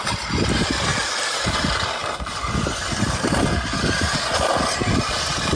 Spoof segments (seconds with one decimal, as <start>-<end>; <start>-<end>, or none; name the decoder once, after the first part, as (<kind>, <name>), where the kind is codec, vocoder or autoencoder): 0.9-1.4 (vocoder, BigVGAN v2)